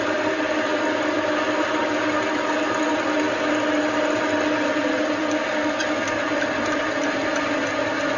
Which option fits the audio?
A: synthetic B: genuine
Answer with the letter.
B